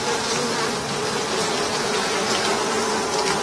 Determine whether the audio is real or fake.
real